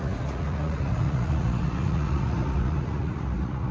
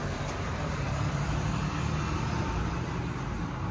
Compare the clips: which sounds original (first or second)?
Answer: second